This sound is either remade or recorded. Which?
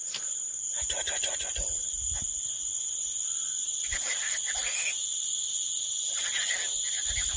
recorded